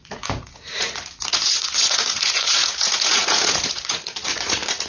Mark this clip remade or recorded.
remade